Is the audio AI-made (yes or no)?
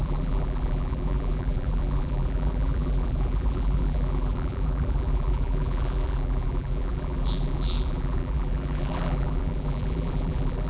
yes